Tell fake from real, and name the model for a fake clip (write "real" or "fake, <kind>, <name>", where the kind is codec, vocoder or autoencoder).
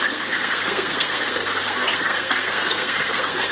fake, codec, SNAC